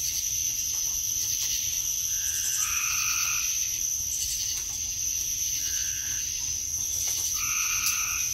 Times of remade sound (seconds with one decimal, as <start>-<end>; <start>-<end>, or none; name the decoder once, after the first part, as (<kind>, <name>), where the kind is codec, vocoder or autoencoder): none